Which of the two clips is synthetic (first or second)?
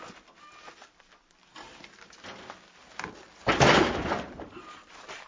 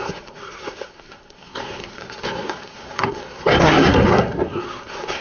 second